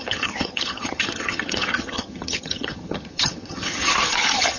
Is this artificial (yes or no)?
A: yes